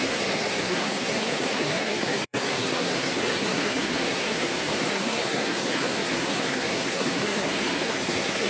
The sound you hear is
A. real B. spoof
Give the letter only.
B